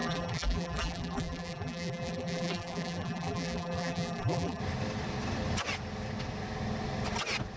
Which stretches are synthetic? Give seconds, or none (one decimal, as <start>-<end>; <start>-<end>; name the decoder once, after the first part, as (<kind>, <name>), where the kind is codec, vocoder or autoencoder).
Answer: 0.0-4.6 (vocoder, BigVGAN v2)